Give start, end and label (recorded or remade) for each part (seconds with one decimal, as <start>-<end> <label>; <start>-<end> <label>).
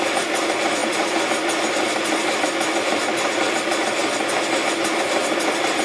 0.0-4.0 remade; 4.0-5.2 recorded; 5.2-5.8 remade